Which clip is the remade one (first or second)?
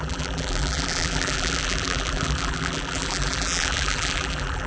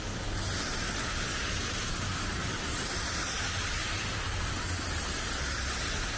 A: first